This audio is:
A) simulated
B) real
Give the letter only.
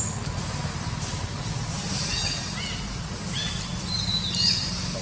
B